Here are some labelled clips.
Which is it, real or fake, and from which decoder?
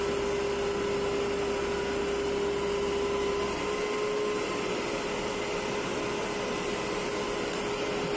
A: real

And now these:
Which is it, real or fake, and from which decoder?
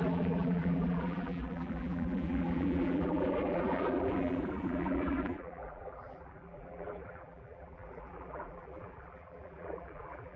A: fake, vocoder, BigVGAN v2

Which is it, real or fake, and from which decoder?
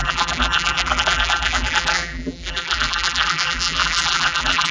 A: fake, vocoder, BigVGAN v2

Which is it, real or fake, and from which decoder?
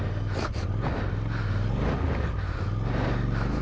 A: real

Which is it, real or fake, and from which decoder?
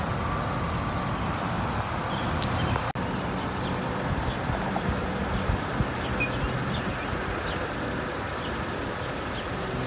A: real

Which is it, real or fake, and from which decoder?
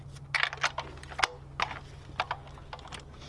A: real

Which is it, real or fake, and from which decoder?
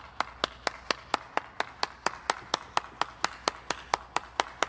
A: real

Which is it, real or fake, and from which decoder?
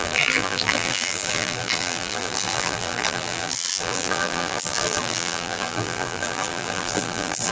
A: fake, vocoder, BigVGAN v2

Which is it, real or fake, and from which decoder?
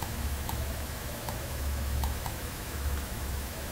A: fake, autoencoder, DAC-VAE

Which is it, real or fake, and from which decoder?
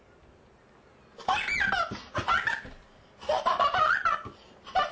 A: real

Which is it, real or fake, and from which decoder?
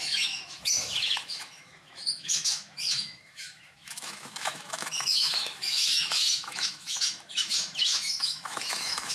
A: fake, autoencoder, DAC-VAE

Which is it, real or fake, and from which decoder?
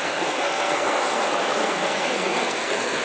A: fake, codec, SNAC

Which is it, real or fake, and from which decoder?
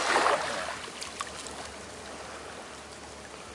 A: real